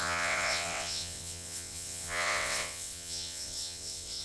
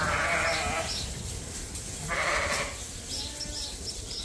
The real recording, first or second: second